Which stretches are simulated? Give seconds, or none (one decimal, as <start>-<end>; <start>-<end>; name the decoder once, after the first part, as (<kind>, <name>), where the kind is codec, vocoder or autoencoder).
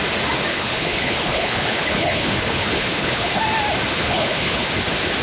0.5-3.4 (codec, HILCodec); 3.9-4.7